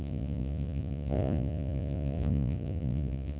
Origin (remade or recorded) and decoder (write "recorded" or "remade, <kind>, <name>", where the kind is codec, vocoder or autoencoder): remade, vocoder, Vocos